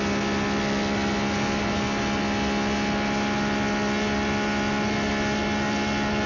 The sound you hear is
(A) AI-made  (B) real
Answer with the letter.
B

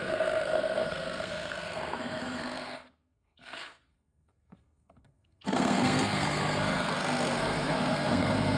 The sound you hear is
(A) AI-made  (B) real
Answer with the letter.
A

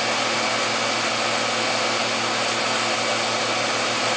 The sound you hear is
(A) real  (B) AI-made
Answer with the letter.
A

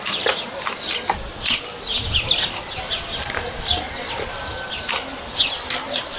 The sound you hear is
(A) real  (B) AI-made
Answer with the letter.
A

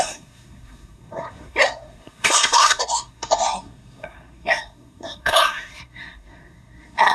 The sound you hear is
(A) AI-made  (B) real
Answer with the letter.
A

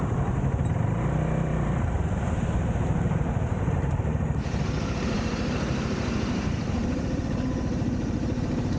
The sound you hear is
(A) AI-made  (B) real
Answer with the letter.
A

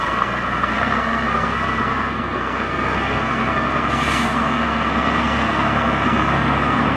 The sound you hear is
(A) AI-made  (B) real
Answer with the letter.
A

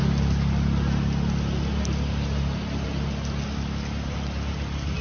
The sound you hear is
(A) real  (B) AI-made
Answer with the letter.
A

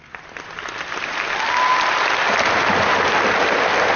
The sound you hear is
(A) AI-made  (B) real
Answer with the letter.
B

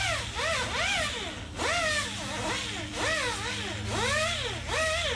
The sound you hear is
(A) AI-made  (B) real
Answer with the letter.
B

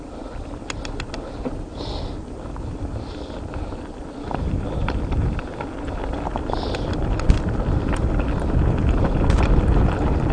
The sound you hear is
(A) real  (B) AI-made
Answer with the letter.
A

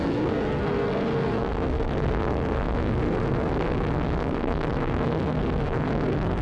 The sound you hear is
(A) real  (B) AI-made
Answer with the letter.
B